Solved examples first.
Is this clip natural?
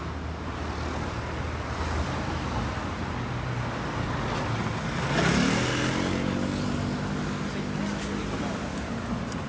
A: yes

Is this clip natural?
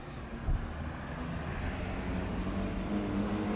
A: yes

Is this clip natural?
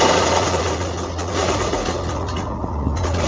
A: no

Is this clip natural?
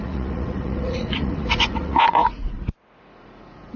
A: no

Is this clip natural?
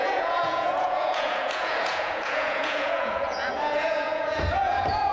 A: no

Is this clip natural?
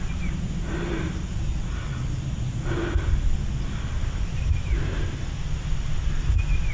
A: yes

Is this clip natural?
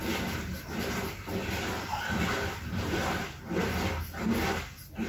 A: yes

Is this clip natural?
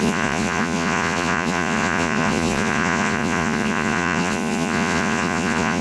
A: no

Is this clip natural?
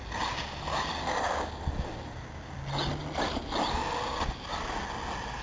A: yes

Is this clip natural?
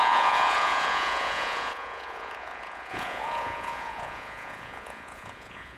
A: no